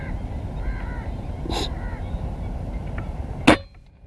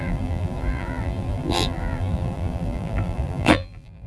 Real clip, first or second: first